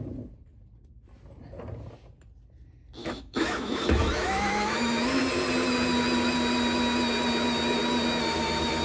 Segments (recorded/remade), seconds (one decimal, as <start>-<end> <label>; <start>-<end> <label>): 0.0-3.0 recorded; 3.0-5.2 remade; 5.2-8.8 recorded